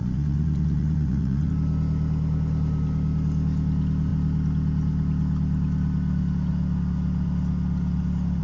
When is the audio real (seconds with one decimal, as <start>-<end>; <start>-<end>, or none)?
1.5-8.4